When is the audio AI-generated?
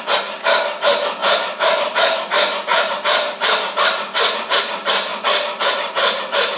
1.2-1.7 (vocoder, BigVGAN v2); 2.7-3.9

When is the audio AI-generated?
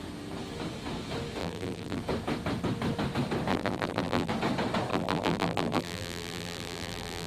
1.4-2.0 (vocoder, BigVGAN v2); 3.5-4.3; 4.9-7.3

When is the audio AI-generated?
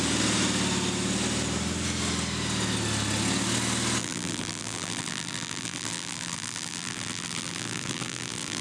4.0-8.6 (vocoder, BigVGAN v2)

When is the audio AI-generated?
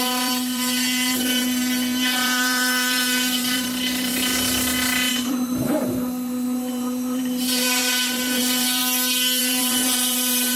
0.0-4.3 (vocoder, BigVGAN v2); 5.1-8.8; 9.4-10.6